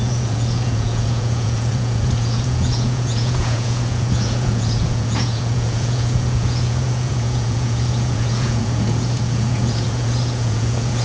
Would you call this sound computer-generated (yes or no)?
yes